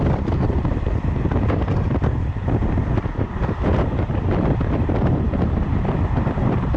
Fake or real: fake